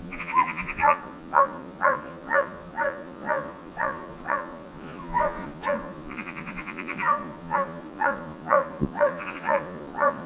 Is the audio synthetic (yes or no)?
yes